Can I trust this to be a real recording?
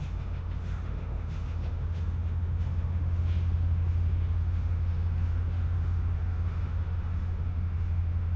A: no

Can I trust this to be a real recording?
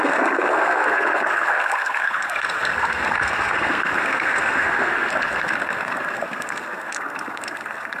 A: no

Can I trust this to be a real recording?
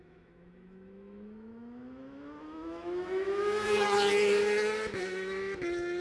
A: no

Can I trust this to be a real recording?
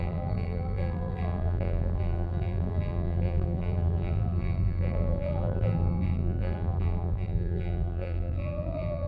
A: no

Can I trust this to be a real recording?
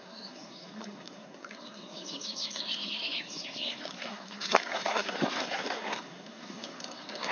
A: no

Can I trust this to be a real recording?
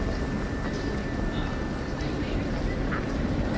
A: yes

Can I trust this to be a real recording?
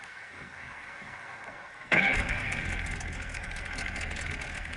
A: no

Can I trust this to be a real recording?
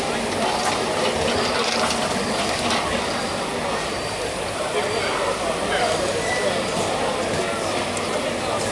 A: yes